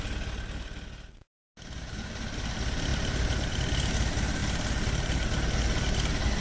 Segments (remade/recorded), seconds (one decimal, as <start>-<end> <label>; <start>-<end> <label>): 0.0-6.4 recorded